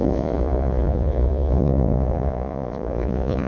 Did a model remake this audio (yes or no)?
yes